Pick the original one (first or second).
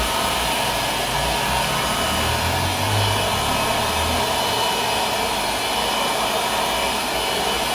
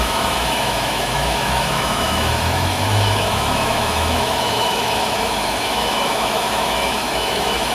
first